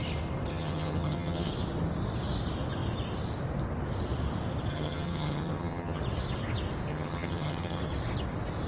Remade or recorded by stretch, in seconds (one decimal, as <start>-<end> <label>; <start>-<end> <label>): 0.0-0.5 recorded; 0.5-1.5 remade; 1.5-4.7 recorded; 4.7-6.0 remade; 6.0-6.9 recorded; 6.9-7.8 remade; 7.8-8.7 recorded